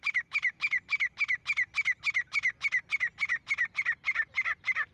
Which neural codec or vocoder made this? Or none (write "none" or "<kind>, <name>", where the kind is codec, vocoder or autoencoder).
vocoder, BigVGAN v2